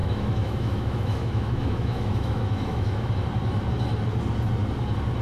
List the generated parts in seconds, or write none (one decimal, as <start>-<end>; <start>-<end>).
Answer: 0.0-3.1